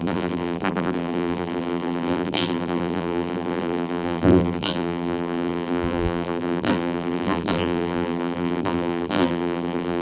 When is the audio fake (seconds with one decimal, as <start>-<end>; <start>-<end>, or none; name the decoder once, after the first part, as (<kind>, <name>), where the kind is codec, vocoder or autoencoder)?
0.0-10.0 (vocoder, BigVGAN v2)